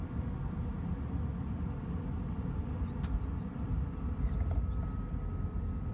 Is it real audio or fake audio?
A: real